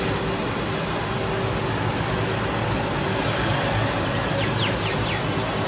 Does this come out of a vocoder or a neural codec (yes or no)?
no